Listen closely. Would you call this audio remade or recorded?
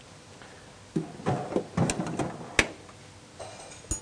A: recorded